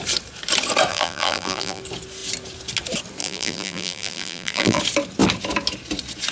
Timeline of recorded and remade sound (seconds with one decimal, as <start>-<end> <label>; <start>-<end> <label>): 0.0-0.9 recorded; 0.9-1.8 remade; 1.8-3.2 recorded; 3.2-4.8 remade; 4.8-6.3 recorded